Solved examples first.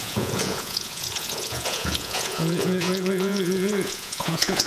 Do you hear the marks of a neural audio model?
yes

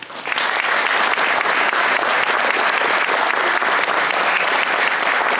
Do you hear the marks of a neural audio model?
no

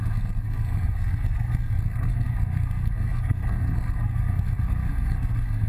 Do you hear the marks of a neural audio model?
yes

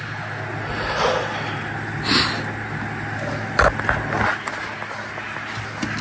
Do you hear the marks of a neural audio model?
no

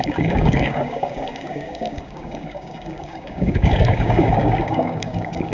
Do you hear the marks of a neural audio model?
yes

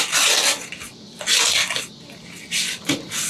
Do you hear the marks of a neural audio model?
no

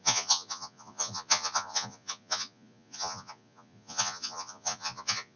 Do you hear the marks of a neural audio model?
yes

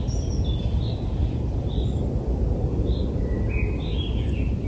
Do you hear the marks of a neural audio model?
no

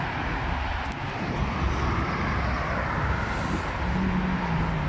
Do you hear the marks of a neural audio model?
no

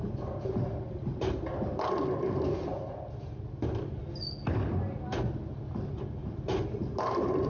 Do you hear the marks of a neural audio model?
no